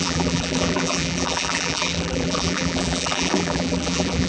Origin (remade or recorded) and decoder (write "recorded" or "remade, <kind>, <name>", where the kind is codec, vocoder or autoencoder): remade, vocoder, BigVGAN v2